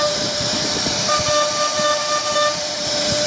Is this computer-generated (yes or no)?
yes